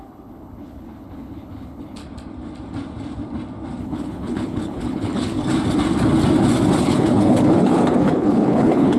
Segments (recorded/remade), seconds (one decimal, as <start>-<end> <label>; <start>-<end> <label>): 0.0-2.0 remade; 2.0-3.8 recorded; 3.8-5.4 remade; 5.4-6.8 recorded; 6.8-9.0 remade